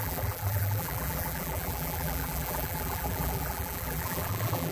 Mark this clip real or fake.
fake